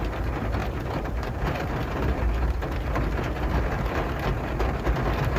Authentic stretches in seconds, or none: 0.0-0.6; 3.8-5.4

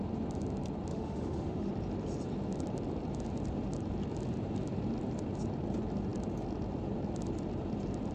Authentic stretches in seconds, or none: 0.0-0.9; 1.7-8.1

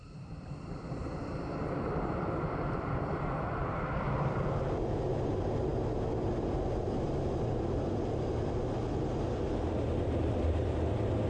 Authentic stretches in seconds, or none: 5.7-10.2

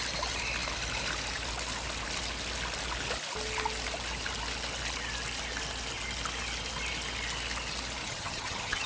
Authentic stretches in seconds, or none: 0.0-8.0

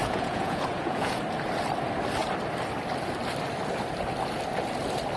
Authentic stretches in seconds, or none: 1.2-5.2